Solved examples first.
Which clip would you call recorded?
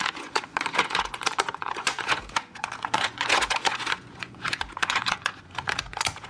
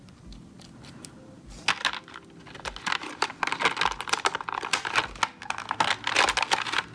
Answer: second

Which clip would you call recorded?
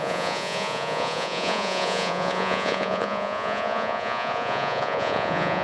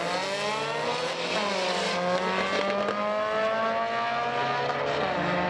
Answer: second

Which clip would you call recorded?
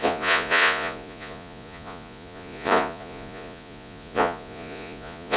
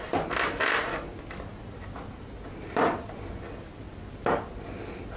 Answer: second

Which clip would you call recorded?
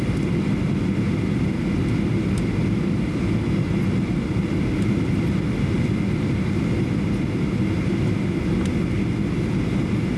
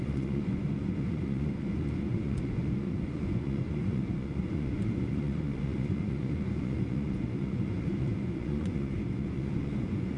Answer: first